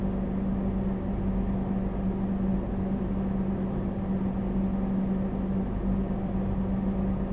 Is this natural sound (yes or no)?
yes